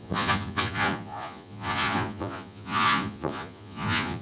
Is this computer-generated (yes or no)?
yes